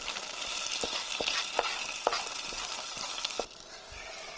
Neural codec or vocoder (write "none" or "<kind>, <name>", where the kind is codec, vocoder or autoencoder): none